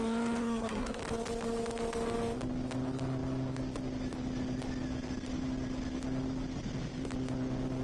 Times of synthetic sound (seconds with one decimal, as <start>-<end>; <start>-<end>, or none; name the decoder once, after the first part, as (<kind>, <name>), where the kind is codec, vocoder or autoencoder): 0.4-1.0 (codec, SNAC)